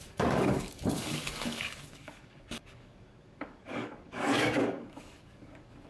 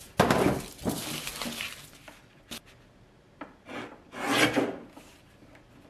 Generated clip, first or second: first